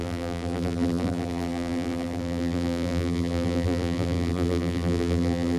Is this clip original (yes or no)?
no